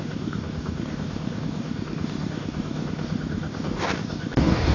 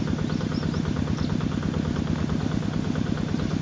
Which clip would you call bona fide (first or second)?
second